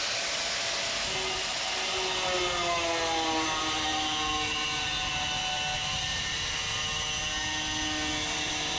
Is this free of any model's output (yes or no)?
yes